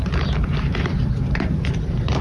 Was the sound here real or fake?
fake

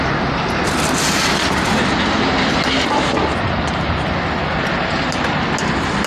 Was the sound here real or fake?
real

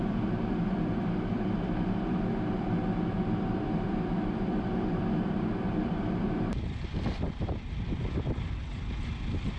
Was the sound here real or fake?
fake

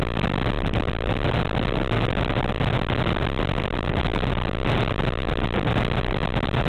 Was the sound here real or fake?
real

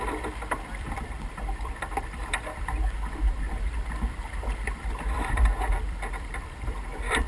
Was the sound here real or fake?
fake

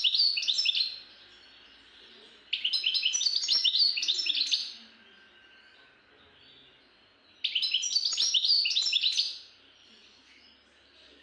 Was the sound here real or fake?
real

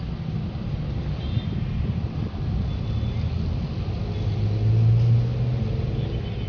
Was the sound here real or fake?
real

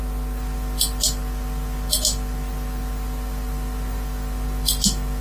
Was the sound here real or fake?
real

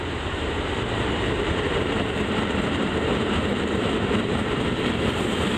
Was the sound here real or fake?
fake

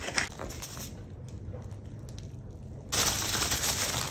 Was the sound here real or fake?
real